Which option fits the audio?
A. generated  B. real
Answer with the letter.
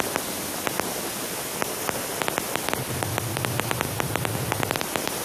B